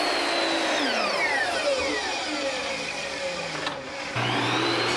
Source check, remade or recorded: remade